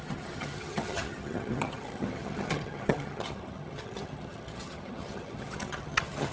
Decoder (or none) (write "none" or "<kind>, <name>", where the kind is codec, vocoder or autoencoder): vocoder, HiFi-GAN